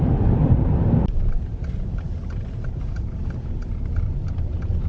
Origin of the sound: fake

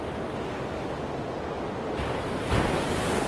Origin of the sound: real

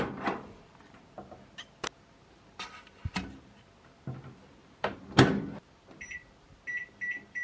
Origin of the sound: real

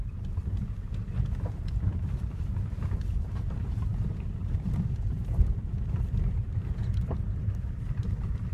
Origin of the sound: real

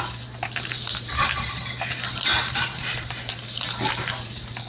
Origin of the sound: fake